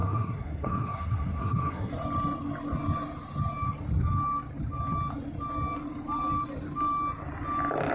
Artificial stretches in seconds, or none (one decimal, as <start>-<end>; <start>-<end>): 0.0-1.9